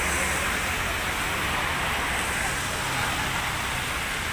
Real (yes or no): yes